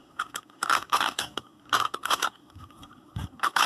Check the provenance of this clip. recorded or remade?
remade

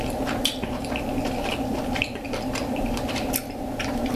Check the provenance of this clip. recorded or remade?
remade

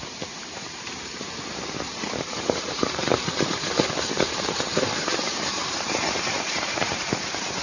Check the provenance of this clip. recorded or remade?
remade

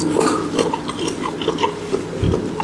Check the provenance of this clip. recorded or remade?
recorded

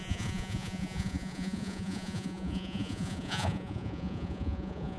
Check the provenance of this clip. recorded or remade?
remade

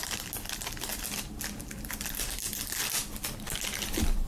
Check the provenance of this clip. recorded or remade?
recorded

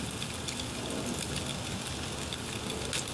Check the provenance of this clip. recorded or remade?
recorded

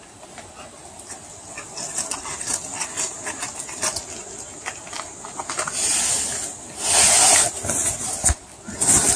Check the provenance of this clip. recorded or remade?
recorded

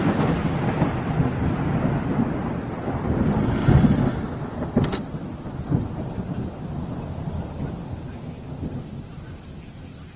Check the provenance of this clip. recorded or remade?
recorded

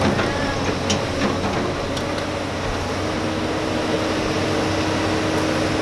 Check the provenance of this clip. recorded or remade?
recorded